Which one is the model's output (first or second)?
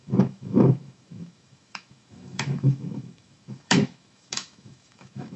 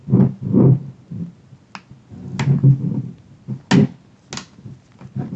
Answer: first